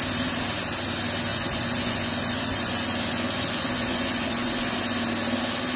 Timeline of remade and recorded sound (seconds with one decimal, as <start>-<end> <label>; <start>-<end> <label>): 0.0-1.3 recorded; 1.3-4.8 remade; 4.8-5.8 recorded